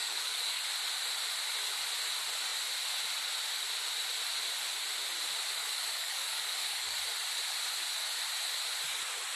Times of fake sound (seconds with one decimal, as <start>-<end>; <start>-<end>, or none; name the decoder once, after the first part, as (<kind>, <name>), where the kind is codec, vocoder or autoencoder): 0.0-0.6 (codec, DAC); 5.6-7.0